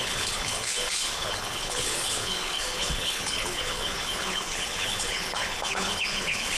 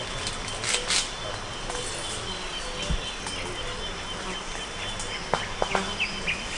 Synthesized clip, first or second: first